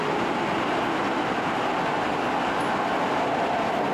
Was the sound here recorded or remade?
recorded